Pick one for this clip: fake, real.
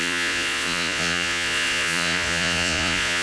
fake